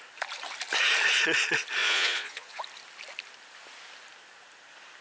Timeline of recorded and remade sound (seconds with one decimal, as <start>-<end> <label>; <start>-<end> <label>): 0.0-1.8 recorded; 1.8-2.6 remade; 2.6-5.0 recorded